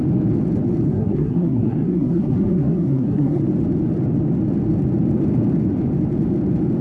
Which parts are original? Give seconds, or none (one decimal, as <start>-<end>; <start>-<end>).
0.0-0.9; 3.4-6.8